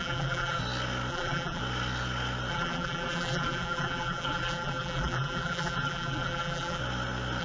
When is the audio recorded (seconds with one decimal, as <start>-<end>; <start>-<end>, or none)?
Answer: 0.6-1.1; 1.6-2.5; 6.8-7.4